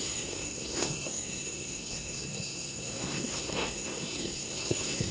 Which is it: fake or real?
fake